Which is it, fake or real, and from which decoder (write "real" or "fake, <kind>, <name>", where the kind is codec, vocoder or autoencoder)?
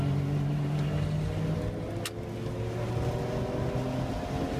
real